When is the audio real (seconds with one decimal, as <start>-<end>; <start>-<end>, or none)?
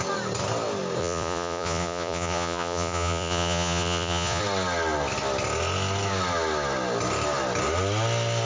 0.0-1.0; 4.4-8.5